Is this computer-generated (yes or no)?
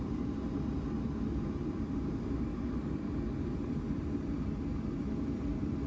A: no